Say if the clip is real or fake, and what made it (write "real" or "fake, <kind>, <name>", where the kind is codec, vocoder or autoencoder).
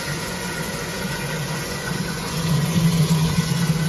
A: fake, vocoder, Vocos